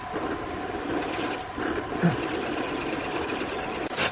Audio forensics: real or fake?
real